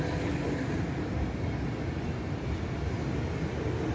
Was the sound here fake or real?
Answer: real